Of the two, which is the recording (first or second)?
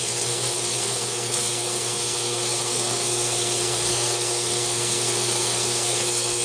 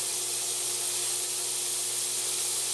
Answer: second